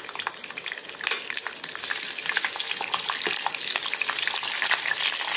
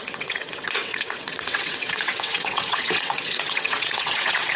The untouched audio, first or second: first